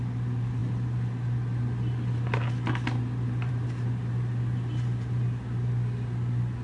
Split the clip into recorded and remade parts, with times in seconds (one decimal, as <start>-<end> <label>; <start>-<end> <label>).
0.0-6.6 recorded